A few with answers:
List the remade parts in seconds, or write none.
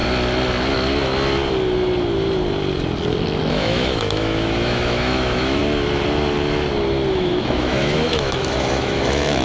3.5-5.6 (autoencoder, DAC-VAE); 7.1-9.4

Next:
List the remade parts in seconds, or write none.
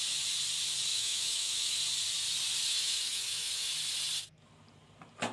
0.9-1.8 (autoencoder, DAC-VAE); 2.7-3.7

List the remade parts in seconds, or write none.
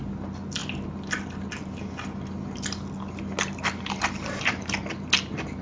none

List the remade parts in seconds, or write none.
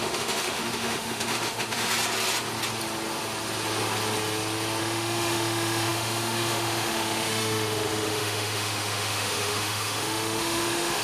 0.0-1.9 (autoencoder, DAC-VAE); 4.8-11.0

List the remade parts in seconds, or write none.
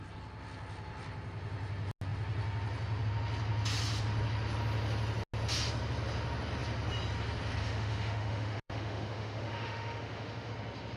7.6-10.5 (autoencoder, DAC-VAE)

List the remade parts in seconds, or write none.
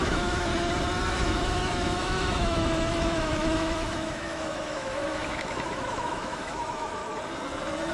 0.0-0.5 (autoencoder, DAC-VAE); 1.1-7.0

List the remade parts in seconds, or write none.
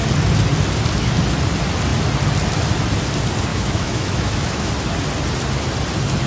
3.5-4.7 (autoencoder, DAC-VAE)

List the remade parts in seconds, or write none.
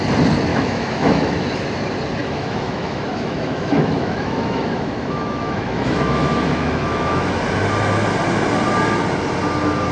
0.5-1.5 (autoencoder, DAC-VAE); 2.2-7.4